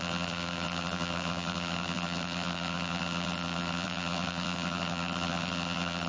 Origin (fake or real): fake